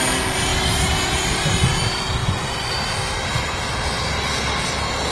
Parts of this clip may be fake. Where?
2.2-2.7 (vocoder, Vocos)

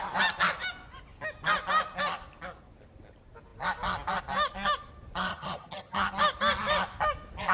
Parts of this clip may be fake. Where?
5.3-6.1 (vocoder, HiFi-GAN)

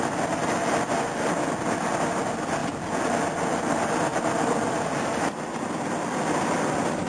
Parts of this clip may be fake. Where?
none

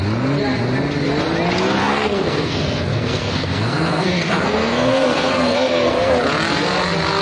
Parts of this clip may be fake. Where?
1.8-6.1 (codec, SNAC)

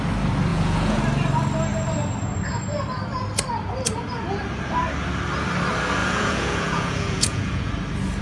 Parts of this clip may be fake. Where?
0.5-1.0 (vocoder, Vocos); 6.0-7.7

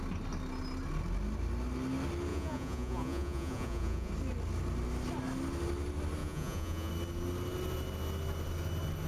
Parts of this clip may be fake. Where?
2.3-4.1 (vocoder, Vocos); 6.2-6.9